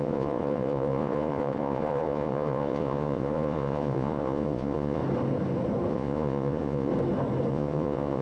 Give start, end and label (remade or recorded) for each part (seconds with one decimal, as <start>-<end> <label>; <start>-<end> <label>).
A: 0.0-5.0 remade; 5.0-5.9 recorded; 5.9-6.9 remade; 6.9-7.5 recorded; 7.5-8.2 remade